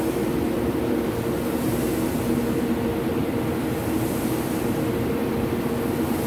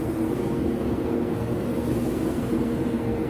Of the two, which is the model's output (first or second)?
second